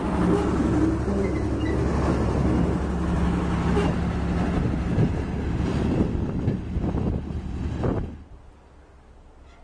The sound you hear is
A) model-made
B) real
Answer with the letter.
B